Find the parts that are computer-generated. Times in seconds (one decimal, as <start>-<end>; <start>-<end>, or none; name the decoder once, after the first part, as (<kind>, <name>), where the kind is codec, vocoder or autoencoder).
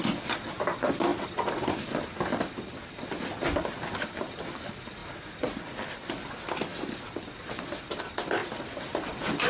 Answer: 0.0-1.1 (vocoder, BigVGAN v2); 4.5-8.4